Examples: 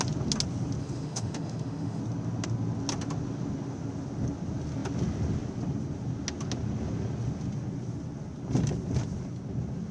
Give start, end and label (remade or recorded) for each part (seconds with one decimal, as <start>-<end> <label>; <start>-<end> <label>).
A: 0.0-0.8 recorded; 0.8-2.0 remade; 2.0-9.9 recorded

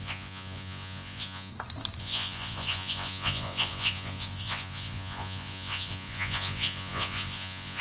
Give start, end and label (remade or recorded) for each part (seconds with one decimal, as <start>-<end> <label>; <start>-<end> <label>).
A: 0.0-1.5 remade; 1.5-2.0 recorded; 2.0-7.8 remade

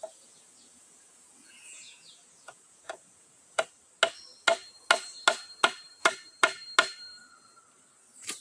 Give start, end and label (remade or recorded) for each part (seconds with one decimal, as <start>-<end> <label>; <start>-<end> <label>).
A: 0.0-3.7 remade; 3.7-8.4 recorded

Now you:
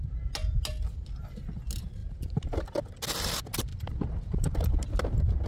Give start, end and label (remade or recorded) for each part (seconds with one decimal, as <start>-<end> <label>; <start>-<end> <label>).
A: 0.0-2.0 recorded; 2.0-2.7 remade; 2.7-3.7 recorded; 3.7-4.9 remade; 4.9-5.5 recorded